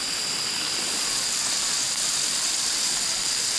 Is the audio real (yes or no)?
yes